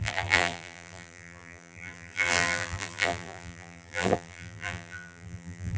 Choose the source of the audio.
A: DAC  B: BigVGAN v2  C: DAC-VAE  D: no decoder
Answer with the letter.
B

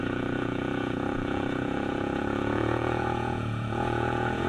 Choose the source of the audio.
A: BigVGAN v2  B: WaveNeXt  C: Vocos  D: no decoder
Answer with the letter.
C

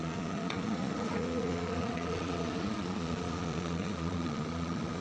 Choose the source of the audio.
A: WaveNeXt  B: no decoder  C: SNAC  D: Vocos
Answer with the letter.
D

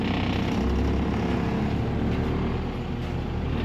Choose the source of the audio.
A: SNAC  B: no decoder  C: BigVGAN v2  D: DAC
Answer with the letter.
B